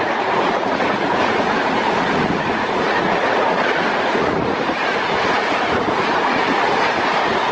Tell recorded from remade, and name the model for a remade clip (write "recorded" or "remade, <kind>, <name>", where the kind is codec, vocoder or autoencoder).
remade, vocoder, Vocos